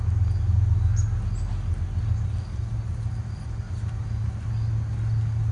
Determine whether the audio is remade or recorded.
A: recorded